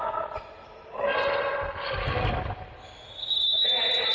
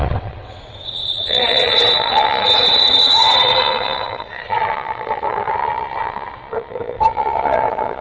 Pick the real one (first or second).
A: first